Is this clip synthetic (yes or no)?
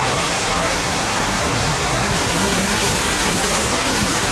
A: yes